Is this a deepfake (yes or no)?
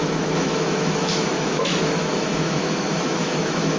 yes